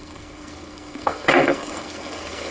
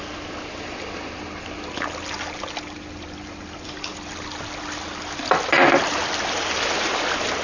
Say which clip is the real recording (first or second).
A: second